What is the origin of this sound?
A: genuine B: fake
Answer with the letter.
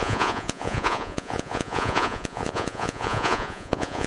B